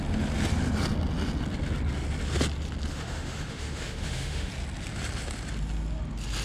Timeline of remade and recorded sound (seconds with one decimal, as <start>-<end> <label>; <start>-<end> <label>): 0.0-2.9 recorded; 2.9-4.5 remade; 4.5-6.4 recorded